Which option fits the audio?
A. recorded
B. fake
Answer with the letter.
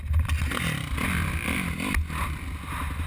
A